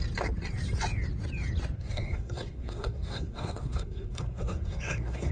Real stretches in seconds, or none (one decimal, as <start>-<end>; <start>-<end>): 0.0-1.8